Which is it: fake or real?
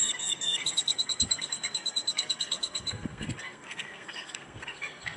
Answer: fake